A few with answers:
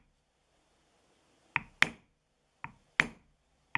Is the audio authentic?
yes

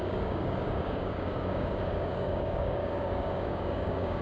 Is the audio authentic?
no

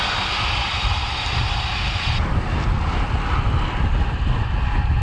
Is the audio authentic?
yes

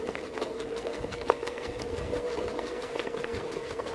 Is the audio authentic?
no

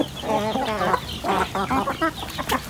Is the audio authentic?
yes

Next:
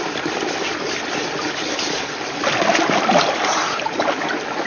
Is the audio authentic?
yes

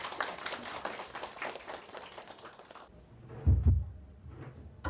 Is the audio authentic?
yes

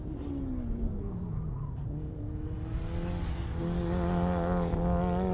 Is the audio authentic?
yes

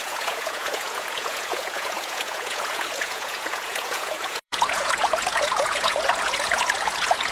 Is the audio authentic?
no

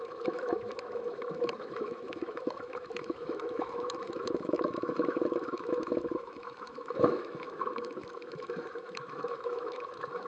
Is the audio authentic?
no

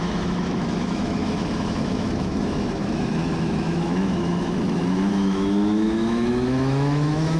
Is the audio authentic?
no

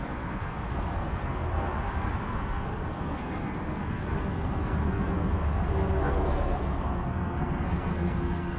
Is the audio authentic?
no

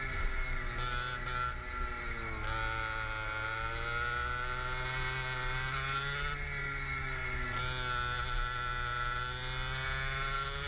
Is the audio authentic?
yes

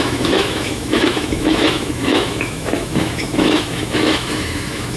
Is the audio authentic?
no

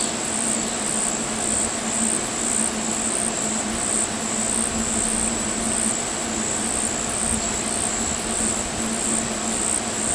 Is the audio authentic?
yes